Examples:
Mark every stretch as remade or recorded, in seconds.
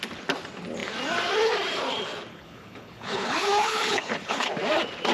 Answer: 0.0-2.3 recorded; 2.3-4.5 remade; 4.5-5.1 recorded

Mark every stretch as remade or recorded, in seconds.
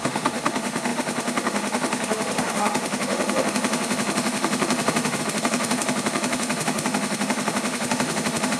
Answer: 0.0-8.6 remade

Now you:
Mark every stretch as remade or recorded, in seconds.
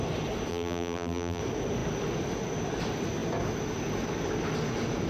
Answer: 0.0-0.5 recorded; 0.5-1.4 remade; 1.4-5.1 recorded